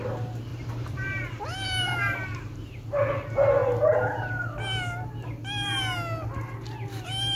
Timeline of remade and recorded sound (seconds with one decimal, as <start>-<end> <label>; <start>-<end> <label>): 0.0-0.5 recorded; 0.5-2.8 remade; 2.8-7.4 recorded